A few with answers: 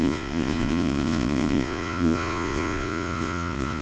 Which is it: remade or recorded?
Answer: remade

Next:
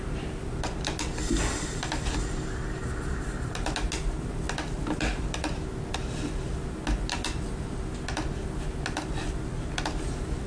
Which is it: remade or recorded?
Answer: recorded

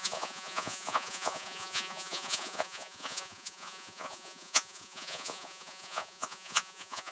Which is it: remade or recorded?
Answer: remade